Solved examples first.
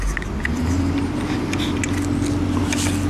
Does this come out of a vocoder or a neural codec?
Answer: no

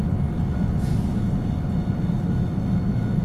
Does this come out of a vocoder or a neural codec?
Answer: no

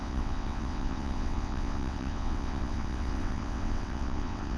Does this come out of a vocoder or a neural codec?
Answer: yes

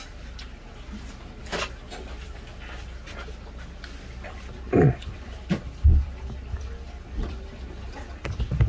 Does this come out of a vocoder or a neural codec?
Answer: no